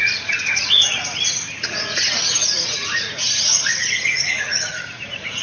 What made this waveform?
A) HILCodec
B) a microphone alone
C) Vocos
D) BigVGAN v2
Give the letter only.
C